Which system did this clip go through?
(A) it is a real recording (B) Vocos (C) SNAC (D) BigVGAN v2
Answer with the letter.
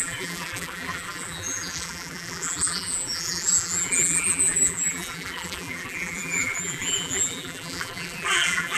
D